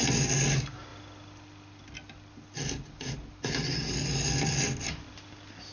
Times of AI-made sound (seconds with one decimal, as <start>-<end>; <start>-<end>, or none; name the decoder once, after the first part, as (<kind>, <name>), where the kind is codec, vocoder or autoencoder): none